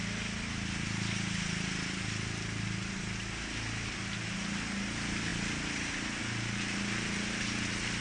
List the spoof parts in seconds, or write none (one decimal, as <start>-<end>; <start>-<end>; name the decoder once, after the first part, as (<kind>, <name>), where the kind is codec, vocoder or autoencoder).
none